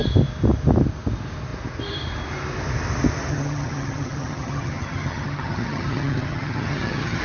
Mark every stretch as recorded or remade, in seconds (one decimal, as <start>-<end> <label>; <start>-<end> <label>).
0.0-3.3 recorded; 3.3-7.2 remade